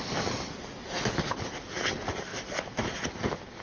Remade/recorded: recorded